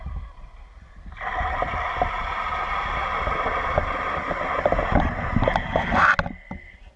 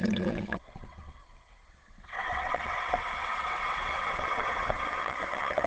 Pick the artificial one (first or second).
second